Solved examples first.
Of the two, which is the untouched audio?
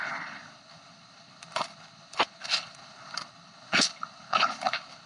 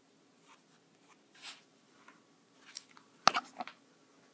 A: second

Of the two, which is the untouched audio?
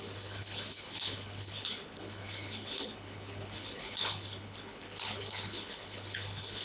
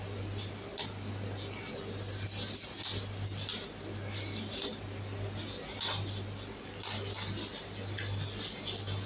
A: second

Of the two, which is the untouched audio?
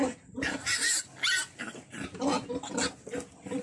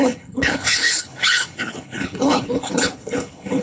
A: first